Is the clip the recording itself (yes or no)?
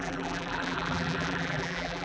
no